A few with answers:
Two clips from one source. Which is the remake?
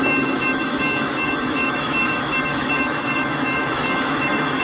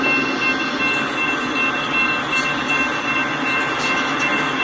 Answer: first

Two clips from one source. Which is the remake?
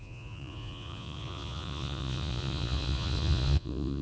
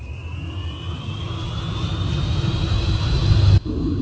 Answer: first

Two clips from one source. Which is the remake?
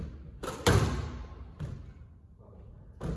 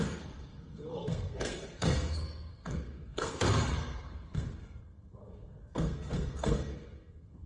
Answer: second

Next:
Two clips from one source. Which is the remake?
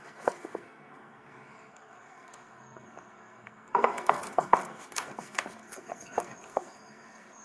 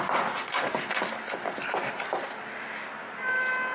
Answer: first